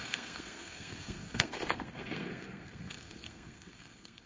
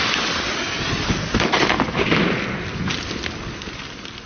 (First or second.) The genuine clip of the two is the second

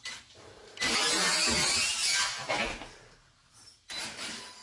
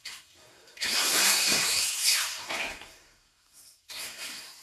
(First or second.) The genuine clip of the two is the first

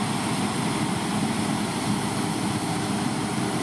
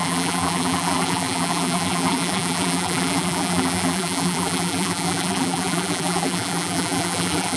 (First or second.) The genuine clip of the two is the first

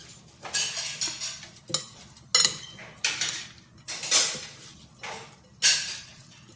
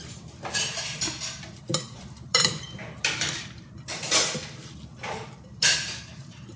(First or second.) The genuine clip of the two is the first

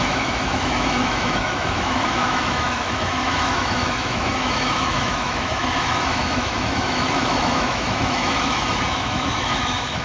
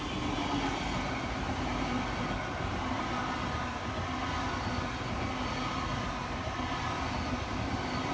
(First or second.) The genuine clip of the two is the second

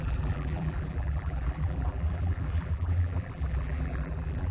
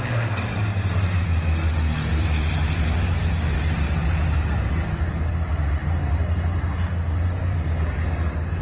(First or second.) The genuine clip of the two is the second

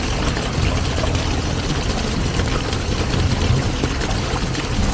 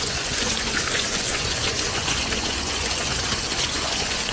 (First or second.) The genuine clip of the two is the first